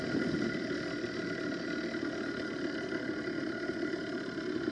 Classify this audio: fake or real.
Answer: real